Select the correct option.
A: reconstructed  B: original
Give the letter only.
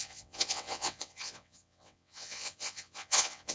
A